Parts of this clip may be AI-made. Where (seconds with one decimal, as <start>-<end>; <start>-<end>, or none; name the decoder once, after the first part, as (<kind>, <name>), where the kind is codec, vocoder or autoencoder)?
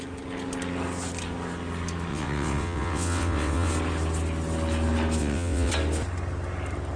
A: 2.1-3.7 (vocoder, WaveNeXt); 5.2-5.7